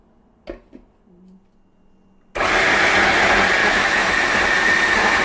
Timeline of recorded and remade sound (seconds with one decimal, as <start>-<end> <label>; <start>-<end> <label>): 0.0-3.6 recorded; 3.6-4.1 remade; 4.1-5.2 recorded

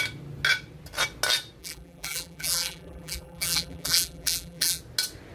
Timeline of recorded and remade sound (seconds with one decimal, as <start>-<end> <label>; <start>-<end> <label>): 0.0-1.6 recorded; 1.6-4.8 remade; 4.8-5.3 recorded

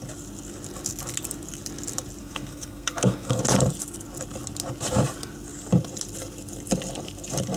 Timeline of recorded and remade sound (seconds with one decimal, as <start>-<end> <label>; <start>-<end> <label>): 0.0-2.2 recorded; 2.2-3.4 remade; 3.4-7.6 recorded

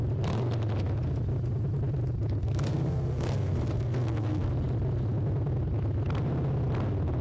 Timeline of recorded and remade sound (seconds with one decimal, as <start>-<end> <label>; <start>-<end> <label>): 0.0-2.4 recorded; 2.4-4.5 remade; 4.5-7.2 recorded

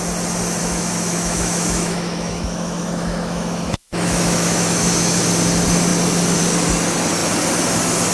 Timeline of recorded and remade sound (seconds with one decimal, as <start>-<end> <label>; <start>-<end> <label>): 0.0-0.6 recorded; 0.6-5.2 remade; 5.2-8.1 recorded

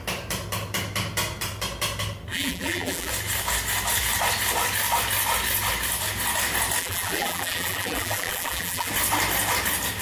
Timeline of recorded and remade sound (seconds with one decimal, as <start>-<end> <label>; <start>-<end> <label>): 0.0-2.3 recorded; 2.3-3.1 remade; 3.1-6.8 recorded; 6.8-8.9 remade; 8.9-10.0 recorded